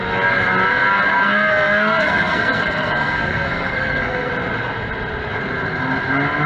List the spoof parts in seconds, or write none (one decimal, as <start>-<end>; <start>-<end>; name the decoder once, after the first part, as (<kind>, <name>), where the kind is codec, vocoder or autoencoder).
1.1-4.3 (codec, SNAC)

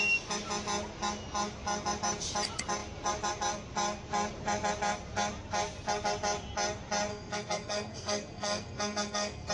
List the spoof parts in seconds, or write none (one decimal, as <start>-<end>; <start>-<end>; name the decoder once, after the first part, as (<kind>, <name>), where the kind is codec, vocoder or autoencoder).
7.1-9.5 (codec, SNAC)

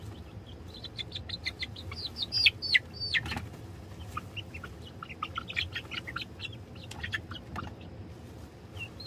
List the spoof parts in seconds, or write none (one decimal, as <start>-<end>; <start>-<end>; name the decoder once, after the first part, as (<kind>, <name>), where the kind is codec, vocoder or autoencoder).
none

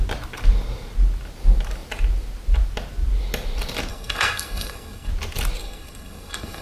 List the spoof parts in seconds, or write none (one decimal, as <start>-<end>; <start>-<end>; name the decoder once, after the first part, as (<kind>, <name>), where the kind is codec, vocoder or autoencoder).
3.9-5.1 (codec, SNAC); 5.6-6.6

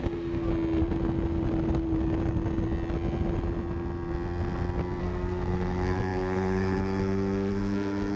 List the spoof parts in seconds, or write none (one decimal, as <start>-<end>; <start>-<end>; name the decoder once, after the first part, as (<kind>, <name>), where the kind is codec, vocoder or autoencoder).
0.0-0.5 (codec, SNAC); 5.0-8.2

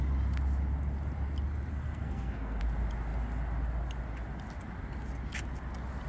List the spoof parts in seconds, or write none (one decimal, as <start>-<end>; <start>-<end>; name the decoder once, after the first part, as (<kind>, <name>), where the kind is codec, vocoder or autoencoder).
1.7-2.6 (codec, SNAC)